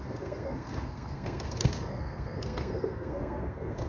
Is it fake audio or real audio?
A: fake